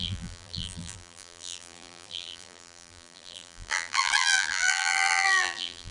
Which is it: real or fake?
fake